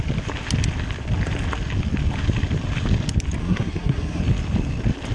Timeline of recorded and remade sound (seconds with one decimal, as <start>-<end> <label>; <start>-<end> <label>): 0.0-3.4 recorded; 3.4-4.2 remade; 4.2-5.1 recorded